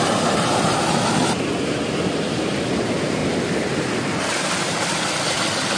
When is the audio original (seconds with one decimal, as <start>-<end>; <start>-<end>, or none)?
0.0-5.8